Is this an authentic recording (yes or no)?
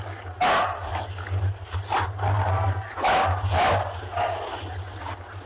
yes